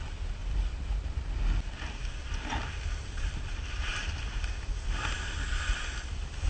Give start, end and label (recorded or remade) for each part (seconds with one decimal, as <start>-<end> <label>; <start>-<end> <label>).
0.0-0.4 recorded; 0.4-0.9 remade; 0.9-2.0 recorded; 2.0-2.6 remade; 2.6-6.5 recorded